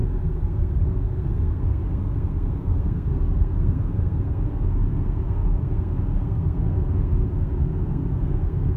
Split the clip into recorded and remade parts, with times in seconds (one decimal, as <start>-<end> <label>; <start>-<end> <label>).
0.0-8.8 remade